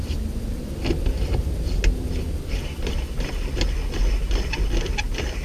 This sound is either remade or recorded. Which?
recorded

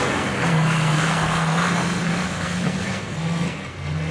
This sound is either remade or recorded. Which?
remade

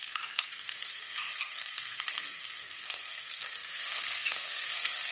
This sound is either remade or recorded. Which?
remade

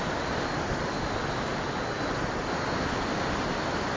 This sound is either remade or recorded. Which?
recorded